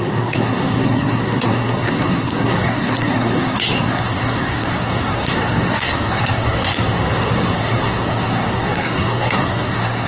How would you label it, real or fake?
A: fake